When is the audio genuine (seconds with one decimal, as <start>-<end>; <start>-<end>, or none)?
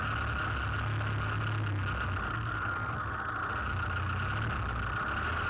0.0-2.3; 3.0-5.5